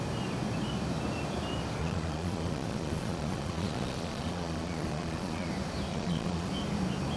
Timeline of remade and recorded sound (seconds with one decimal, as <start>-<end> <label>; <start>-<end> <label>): 0.0-1.8 recorded; 1.8-5.5 remade; 5.5-5.9 recorded; 5.9-6.5 remade; 6.5-7.2 recorded